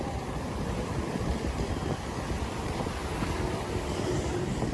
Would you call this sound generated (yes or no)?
yes